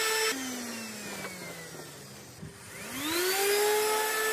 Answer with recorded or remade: recorded